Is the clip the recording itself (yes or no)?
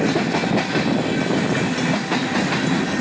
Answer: yes